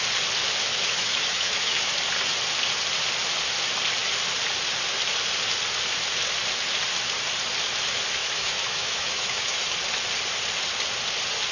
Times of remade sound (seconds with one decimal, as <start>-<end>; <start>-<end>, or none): 0.7-1.9; 8.2-9.7

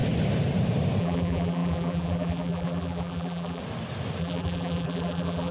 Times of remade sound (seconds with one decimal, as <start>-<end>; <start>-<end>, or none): 1.0-3.6; 4.2-5.5

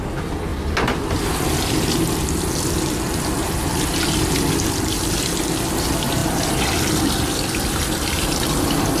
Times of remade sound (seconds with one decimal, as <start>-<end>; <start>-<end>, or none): none

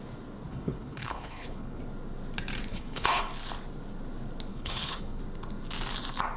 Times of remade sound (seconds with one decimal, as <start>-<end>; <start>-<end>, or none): 0.5-1.8; 2.7-3.2; 4.5-5.2

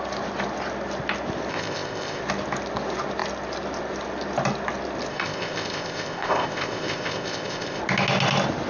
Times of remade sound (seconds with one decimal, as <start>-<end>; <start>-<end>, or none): 1.5-2.2; 5.1-7.8

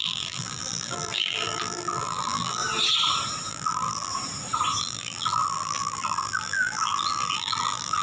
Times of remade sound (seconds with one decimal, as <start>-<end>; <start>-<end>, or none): 0.0-2.6; 3.5-4.1; 4.8-8.0

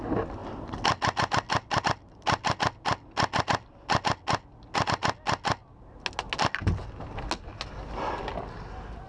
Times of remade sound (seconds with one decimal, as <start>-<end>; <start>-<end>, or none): none

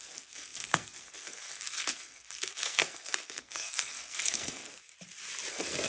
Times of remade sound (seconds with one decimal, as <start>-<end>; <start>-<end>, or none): 0.0-4.9; 5.5-5.9